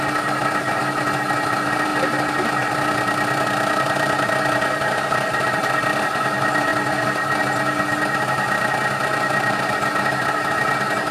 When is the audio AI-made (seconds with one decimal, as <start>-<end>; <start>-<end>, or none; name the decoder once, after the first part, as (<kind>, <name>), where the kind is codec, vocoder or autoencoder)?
none